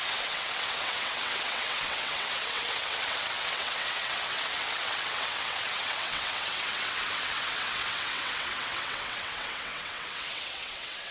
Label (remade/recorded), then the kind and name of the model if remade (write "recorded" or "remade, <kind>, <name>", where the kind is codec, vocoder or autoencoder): remade, vocoder, WaveNeXt